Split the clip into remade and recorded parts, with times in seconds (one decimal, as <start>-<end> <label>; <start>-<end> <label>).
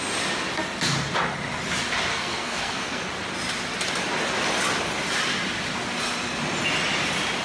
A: 0.0-2.1 recorded; 2.1-3.0 remade; 3.0-7.4 recorded